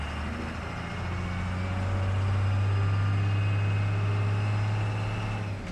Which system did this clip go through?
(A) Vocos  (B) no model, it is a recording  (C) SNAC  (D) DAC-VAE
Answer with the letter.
B